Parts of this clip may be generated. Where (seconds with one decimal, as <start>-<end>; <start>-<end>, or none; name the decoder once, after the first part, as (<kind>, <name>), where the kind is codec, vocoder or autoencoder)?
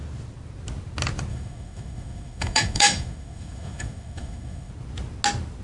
1.3-4.7 (autoencoder, DAC-VAE)